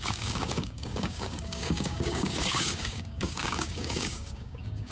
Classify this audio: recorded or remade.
remade